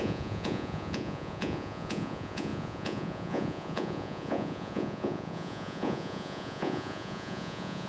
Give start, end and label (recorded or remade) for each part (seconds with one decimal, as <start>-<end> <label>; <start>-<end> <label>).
0.0-7.9 remade